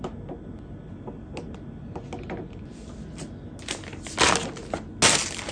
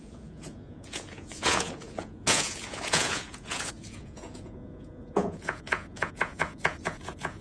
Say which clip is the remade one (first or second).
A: second